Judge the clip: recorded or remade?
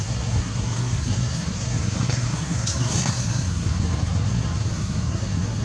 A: remade